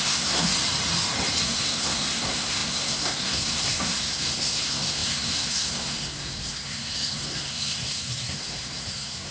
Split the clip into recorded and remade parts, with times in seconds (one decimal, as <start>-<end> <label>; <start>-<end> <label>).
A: 0.0-0.5 remade; 0.5-1.4 recorded; 1.4-9.3 remade